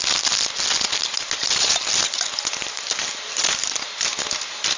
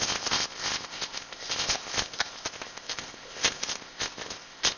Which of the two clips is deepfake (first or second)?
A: second